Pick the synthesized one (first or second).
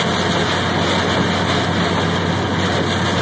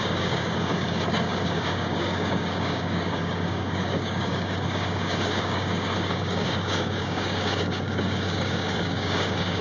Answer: second